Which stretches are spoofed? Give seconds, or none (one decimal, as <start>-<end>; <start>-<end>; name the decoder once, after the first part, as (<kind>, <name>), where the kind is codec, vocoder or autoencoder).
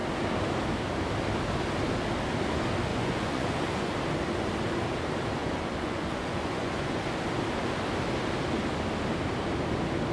2.9-3.9 (vocoder, Vocos); 5.4-7.0